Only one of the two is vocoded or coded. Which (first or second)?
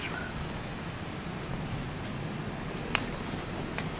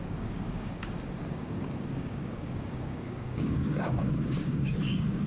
second